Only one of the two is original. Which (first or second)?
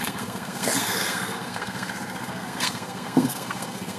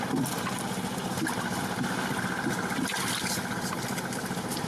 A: second